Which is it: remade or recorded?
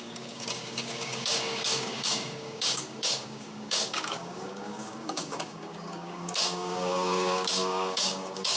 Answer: remade